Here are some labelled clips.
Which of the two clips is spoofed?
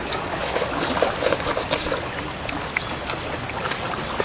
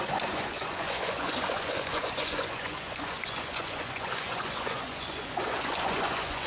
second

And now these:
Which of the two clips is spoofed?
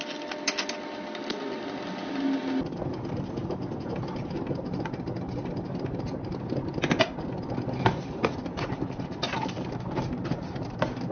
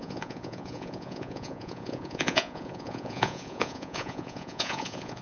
second